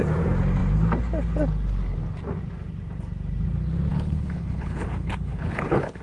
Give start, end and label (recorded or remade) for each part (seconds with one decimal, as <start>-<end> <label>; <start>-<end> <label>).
0.0-3.9 recorded; 3.9-6.0 remade